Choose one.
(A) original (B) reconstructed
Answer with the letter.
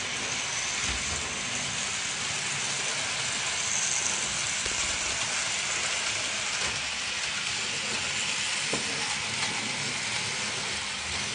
A